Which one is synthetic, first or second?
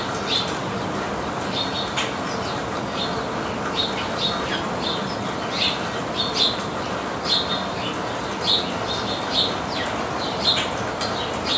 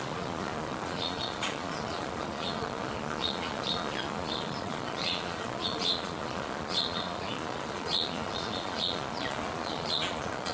second